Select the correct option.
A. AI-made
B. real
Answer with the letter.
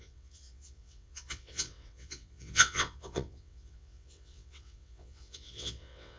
A